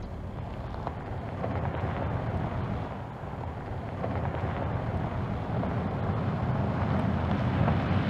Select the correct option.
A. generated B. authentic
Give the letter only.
B